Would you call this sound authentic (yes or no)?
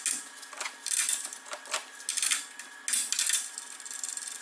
yes